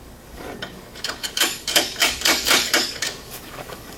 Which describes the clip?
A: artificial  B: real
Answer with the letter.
A